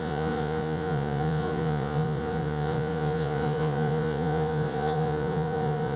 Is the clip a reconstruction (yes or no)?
yes